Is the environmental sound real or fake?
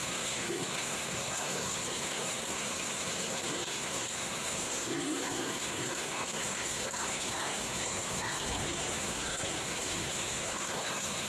fake